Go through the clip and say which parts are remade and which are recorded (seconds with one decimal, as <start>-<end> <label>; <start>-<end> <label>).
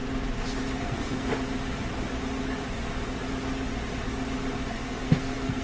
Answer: 0.0-0.8 recorded; 0.8-1.3 remade; 1.3-4.7 recorded; 4.7-5.6 remade